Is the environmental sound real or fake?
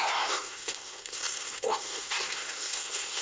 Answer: fake